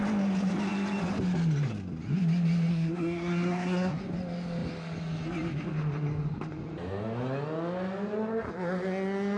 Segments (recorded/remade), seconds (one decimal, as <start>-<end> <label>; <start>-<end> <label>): 0.0-2.7 recorded; 2.7-4.0 remade; 4.0-9.4 recorded